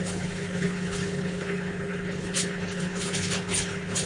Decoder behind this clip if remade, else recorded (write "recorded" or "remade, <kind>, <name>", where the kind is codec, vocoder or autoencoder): remade, codec, HILCodec